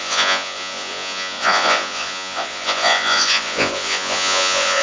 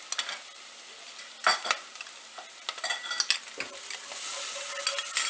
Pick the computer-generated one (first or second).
first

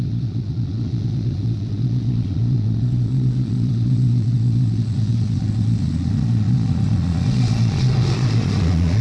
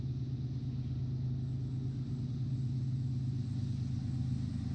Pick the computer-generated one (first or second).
first